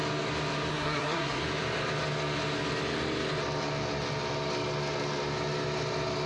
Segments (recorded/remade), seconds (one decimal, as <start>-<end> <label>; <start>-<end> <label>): 0.0-0.7 recorded; 0.7-1.4 remade; 1.4-6.3 recorded